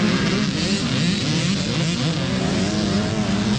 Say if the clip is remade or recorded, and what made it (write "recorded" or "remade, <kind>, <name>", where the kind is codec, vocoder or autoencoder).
recorded